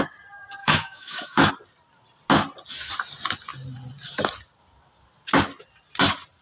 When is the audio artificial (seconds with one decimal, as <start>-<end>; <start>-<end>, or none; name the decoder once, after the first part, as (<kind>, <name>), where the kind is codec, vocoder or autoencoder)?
0.6-1.5 (autoencoder, DAC-VAE)